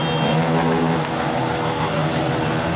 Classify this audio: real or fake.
real